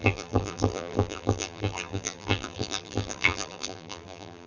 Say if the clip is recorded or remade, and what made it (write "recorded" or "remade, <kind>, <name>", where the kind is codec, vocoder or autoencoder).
remade, vocoder, BigVGAN v2